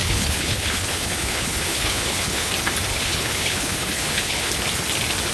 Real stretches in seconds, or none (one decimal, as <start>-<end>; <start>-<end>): 2.5-2.9; 4.5-5.3